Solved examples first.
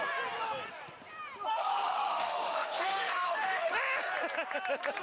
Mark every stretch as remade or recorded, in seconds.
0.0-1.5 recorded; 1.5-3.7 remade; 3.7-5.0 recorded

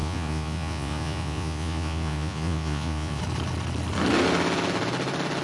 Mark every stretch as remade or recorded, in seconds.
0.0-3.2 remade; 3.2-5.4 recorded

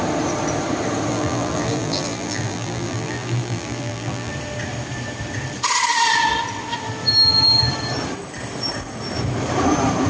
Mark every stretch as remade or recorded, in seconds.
0.0-1.1 recorded; 1.1-4.3 remade; 4.3-10.1 recorded

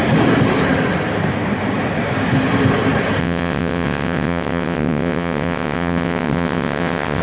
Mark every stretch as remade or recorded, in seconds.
0.0-3.2 recorded; 3.2-7.2 remade

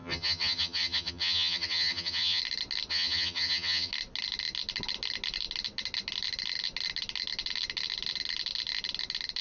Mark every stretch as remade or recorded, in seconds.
0.0-2.4 remade; 2.4-2.9 recorded; 2.9-3.9 remade; 3.9-9.4 recorded